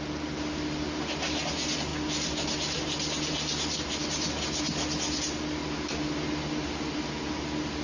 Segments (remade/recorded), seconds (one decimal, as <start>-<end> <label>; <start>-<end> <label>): 0.0-7.8 recorded